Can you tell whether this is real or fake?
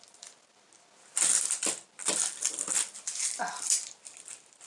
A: real